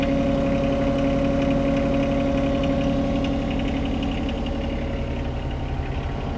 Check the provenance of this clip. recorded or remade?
recorded